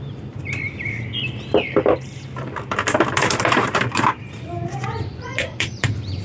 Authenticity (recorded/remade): remade